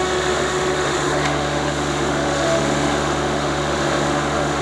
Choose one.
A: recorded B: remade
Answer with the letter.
B